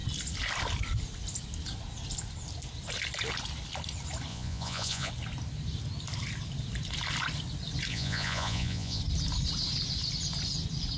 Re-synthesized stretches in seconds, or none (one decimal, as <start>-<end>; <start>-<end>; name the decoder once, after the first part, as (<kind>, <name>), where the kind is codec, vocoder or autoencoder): 4.3-5.1 (vocoder, Vocos); 7.9-9.0